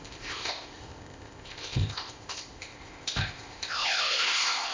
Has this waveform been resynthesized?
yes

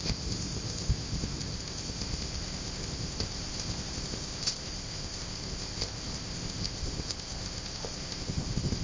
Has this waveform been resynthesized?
yes